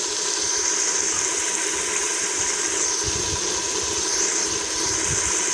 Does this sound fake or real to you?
real